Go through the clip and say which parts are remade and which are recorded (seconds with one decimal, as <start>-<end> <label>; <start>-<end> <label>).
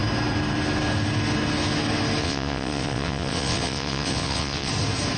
0.0-2.2 recorded; 2.2-4.7 remade; 4.7-5.2 recorded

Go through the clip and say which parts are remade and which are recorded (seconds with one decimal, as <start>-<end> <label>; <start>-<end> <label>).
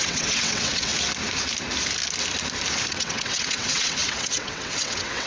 0.0-0.9 remade; 0.9-2.9 recorded; 2.9-5.3 remade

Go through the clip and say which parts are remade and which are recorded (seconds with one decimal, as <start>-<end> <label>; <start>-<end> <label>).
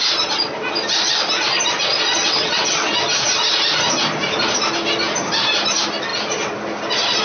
0.0-2.2 recorded; 2.2-2.9 remade; 2.9-7.2 recorded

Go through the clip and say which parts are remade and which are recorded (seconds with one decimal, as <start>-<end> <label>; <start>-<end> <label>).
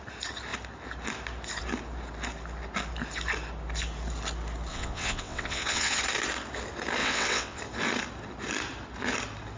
0.0-4.7 recorded; 4.7-6.0 remade; 6.0-7.0 recorded; 7.0-7.6 remade; 7.6-9.6 recorded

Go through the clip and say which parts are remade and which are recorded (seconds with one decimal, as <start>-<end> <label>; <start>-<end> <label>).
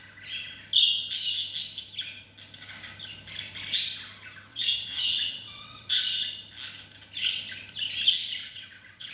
0.0-4.5 recorded; 4.5-5.9 remade; 5.9-8.4 recorded; 8.4-9.1 remade